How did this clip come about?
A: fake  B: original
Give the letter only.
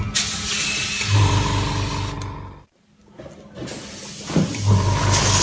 B